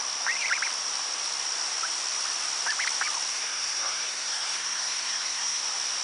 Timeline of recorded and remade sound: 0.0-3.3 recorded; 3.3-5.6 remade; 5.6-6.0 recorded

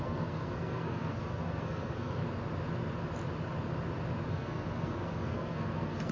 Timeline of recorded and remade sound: 0.0-2.2 remade; 2.2-4.3 recorded; 4.3-6.1 remade

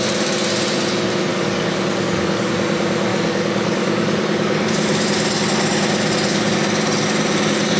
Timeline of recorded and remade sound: 0.0-1.3 recorded; 1.3-2.5 remade; 2.5-3.1 recorded; 3.1-4.7 remade; 4.7-7.8 recorded

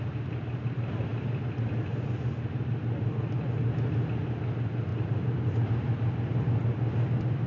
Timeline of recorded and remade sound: 0.0-4.9 recorded; 4.9-5.7 remade; 5.7-7.5 recorded

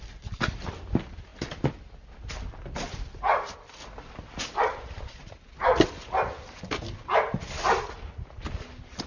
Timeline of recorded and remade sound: 0.0-9.1 recorded

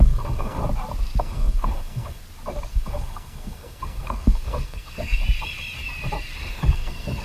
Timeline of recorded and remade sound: 0.0-0.6 remade; 0.6-1.2 recorded; 1.2-2.2 remade; 2.2-2.7 recorded; 2.7-5.2 remade; 5.2-6.5 recorded; 6.5-7.2 remade

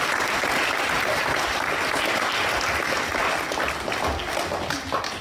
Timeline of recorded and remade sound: 0.0-5.2 recorded

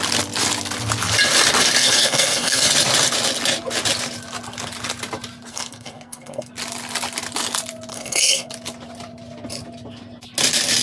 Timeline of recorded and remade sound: 0.0-1.8 recorded; 1.8-2.7 remade; 2.7-5.5 recorded; 5.5-6.5 remade; 6.5-7.9 recorded; 7.9-8.5 remade; 8.5-10.8 recorded